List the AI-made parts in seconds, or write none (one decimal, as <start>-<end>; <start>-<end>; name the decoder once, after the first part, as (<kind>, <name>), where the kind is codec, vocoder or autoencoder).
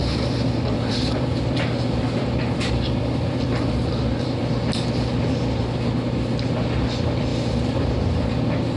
0.0-4.4 (vocoder, BigVGAN v2); 7.3-8.3